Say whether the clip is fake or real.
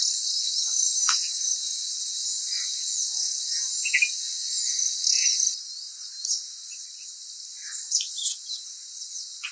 real